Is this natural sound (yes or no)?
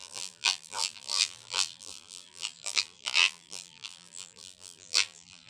no